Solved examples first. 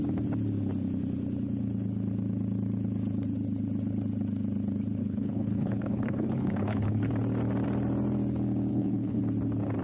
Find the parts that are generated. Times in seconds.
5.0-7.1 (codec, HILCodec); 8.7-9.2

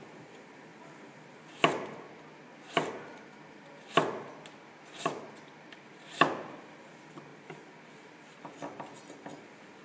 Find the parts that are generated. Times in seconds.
none